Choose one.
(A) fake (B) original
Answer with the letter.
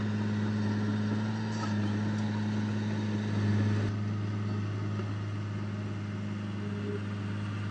B